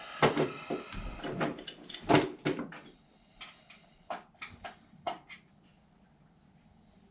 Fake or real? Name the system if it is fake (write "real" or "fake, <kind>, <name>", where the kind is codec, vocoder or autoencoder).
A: real